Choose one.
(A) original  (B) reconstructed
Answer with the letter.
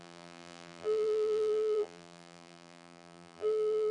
B